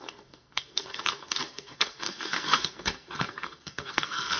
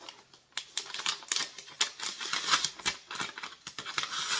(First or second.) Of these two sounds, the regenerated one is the first